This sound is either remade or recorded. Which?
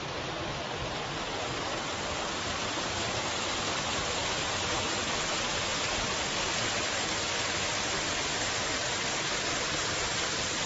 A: recorded